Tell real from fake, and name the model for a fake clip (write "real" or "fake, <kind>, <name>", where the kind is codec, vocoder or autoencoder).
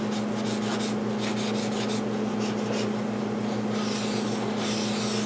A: real